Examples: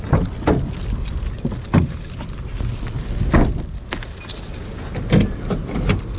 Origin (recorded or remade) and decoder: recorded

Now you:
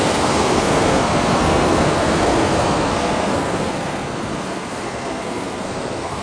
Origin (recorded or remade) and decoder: remade, codec, SNAC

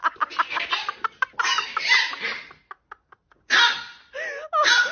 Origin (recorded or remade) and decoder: recorded